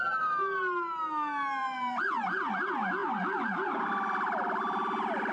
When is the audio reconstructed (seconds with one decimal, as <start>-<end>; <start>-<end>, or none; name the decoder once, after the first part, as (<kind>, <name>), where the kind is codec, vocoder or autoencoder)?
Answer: 1.6-2.5 (vocoder, BigVGAN v2); 3.0-5.3